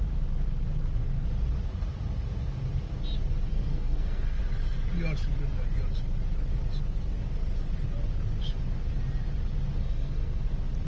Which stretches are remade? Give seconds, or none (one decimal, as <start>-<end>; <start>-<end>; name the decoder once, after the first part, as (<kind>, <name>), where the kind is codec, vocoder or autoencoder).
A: 3.5-4.4 (codec, SNAC); 9.8-10.4